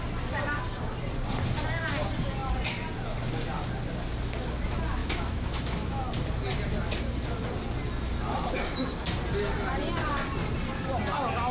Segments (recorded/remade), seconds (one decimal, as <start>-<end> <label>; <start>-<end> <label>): 0.0-5.0 recorded; 5.0-6.1 remade; 6.1-11.5 recorded